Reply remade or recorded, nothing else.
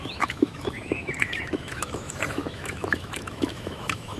remade